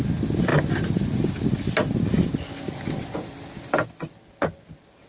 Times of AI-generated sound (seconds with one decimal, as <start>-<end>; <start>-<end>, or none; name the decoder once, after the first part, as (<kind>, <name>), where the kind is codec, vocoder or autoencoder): none